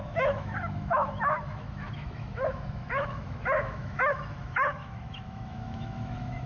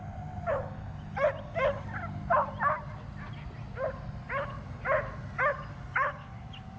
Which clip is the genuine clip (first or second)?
second